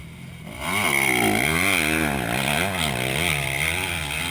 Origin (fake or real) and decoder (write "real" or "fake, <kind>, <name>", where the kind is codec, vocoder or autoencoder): real